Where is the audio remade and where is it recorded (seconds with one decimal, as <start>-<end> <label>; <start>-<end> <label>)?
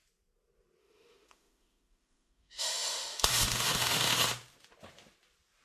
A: 0.0-0.8 recorded; 0.8-4.2 remade; 4.2-5.6 recorded